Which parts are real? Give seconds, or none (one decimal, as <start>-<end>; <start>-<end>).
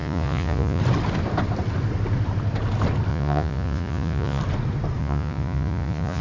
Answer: 0.8-3.1; 4.4-5.0